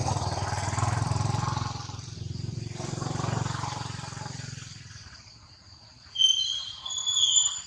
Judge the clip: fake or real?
fake